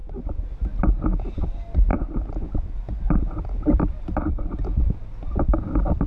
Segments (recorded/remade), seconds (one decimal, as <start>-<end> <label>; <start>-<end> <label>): 0.0-1.9 recorded; 1.9-4.4 remade; 4.4-6.1 recorded